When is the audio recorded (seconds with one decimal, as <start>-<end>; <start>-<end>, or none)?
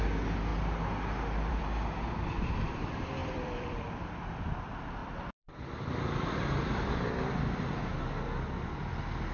0.0-0.5; 1.6-3.2; 4.1-5.0; 8.7-9.3